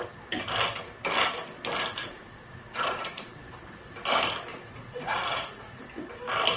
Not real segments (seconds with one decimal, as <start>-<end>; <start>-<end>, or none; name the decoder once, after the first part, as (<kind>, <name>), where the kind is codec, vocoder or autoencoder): 2.0-3.3 (vocoder, Vocos); 4.5-5.8